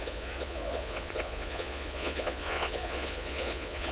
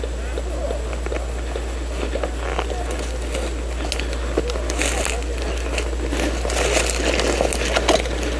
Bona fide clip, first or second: second